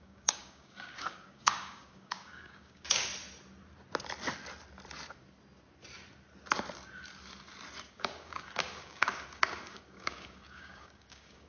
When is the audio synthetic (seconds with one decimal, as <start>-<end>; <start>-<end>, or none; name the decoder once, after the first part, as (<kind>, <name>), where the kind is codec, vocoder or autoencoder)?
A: 0.0-3.1 (codec, DAC); 7.9-11.5